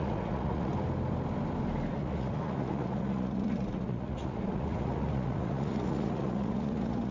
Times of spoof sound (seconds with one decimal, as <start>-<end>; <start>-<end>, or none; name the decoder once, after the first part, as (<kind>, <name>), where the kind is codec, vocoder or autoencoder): 0.0-0.7 (vocoder, Vocos); 1.9-7.1